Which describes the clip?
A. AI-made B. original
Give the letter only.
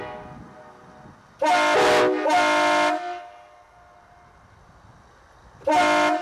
B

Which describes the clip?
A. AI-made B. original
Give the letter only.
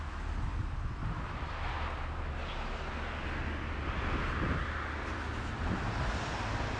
B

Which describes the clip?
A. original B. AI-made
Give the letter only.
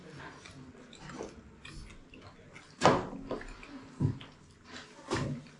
A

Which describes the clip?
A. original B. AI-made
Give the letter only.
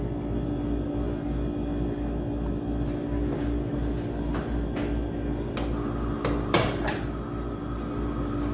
A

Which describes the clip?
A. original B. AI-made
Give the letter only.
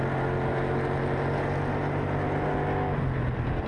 A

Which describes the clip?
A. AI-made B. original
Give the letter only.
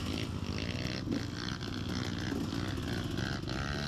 B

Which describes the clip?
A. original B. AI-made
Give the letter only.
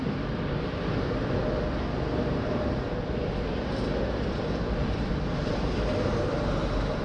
A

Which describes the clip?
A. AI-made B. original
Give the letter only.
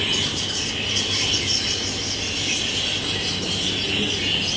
B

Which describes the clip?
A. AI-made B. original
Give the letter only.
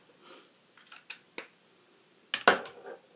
B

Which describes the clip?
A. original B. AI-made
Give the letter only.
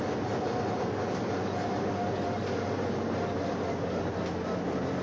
A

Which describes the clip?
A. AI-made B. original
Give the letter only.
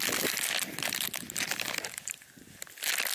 B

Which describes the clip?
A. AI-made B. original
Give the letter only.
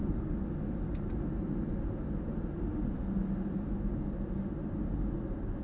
B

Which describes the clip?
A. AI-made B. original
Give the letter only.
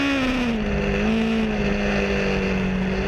B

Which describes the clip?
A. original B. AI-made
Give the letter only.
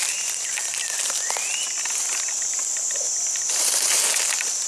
A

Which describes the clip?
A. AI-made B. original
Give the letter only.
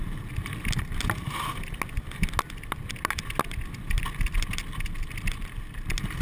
B